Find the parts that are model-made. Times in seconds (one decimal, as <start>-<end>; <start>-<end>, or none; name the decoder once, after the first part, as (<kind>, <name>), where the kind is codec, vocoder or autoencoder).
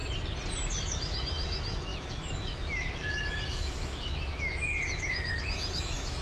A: 0.7-6.2 (autoencoder, DAC-VAE)